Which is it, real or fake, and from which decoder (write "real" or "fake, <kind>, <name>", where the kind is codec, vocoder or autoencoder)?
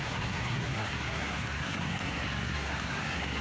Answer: fake, codec, SNAC